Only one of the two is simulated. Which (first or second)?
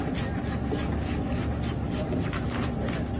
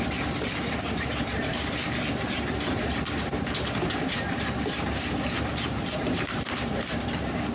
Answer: second